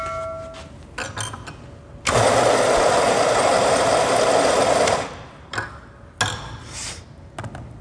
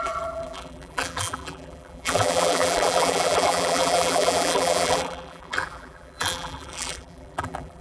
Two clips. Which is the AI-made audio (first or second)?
second